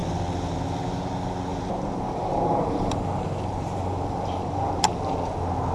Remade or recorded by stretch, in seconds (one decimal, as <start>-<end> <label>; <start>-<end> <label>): 0.0-1.5 recorded; 1.5-4.9 remade; 4.9-5.7 recorded